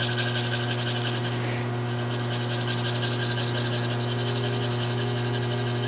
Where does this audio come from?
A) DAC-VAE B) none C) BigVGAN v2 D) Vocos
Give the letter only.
B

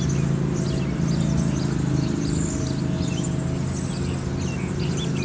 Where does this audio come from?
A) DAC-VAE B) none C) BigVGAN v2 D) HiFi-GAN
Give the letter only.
B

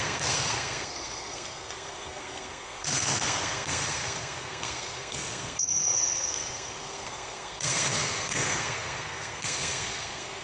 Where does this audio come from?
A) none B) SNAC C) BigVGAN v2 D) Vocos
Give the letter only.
B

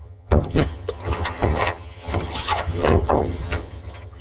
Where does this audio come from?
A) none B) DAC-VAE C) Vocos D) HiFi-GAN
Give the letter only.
D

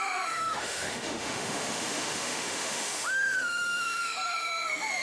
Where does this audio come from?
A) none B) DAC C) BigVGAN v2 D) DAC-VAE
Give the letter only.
D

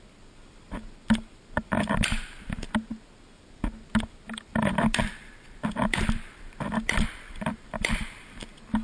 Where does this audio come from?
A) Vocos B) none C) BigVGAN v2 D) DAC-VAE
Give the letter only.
B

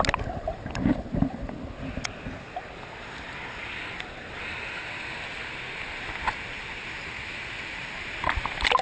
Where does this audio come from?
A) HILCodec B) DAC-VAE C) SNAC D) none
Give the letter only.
D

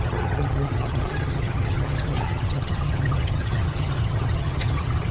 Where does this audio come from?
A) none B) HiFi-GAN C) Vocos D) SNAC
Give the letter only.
B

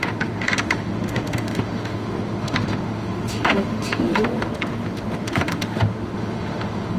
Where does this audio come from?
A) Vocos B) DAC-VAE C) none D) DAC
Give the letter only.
B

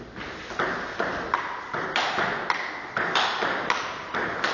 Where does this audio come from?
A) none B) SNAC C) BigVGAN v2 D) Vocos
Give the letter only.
A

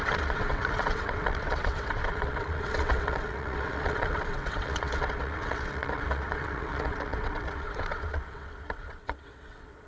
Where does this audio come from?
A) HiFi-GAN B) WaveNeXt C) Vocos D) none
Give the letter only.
B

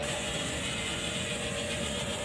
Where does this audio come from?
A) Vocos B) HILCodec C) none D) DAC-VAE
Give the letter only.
A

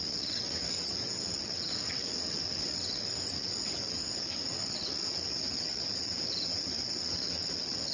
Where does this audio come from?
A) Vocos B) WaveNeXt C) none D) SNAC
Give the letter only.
B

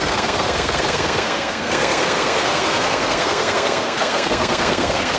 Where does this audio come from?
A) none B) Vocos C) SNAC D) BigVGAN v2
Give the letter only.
C